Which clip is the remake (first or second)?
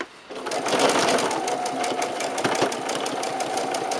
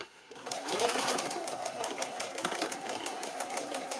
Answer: second